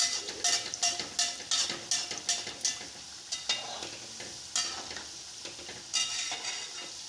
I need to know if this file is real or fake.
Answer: real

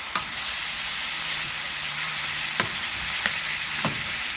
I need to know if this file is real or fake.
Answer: fake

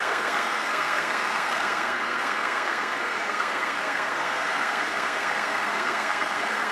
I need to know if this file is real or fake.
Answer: fake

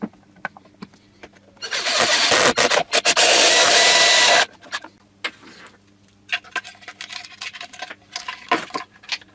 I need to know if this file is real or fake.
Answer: real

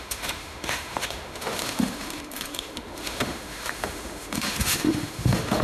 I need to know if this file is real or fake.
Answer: fake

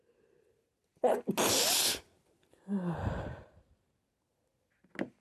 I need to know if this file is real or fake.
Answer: real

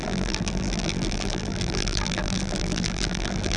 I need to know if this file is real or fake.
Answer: fake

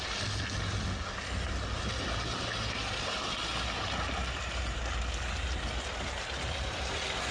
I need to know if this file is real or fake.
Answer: real